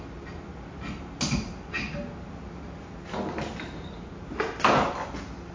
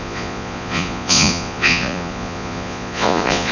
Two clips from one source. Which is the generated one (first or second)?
second